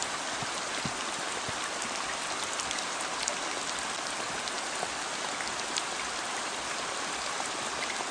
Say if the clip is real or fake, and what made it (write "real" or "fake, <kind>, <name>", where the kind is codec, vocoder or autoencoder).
real